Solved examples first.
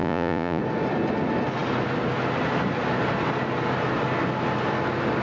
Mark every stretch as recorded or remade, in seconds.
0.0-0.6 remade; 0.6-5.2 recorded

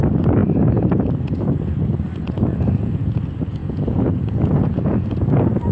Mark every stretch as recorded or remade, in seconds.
0.0-2.5 recorded; 2.5-3.2 remade; 3.2-3.6 recorded; 3.6-5.1 remade; 5.1-5.7 recorded

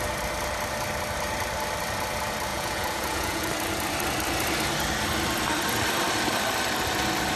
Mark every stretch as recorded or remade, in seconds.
0.0-2.5 recorded; 2.5-3.5 remade; 3.5-7.4 recorded

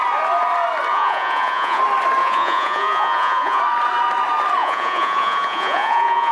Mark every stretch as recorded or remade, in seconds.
0.0-0.9 recorded; 0.9-1.8 remade; 1.8-2.2 recorded; 2.2-3.6 remade; 3.6-4.6 recorded; 4.6-6.3 remade

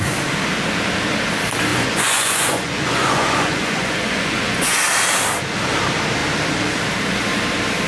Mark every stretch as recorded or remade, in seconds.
0.0-1.7 recorded; 1.7-4.8 remade; 4.8-7.9 recorded

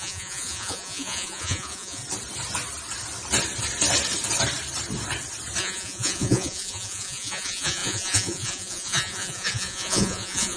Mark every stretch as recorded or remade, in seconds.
0.0-2.0 remade; 2.0-5.6 recorded; 5.6-10.6 remade